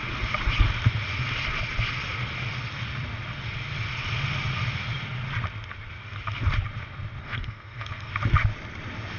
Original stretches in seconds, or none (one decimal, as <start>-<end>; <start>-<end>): 0.0-7.2; 8.1-9.2